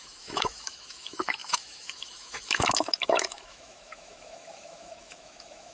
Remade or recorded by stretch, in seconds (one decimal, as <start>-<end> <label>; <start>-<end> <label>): 0.0-5.7 remade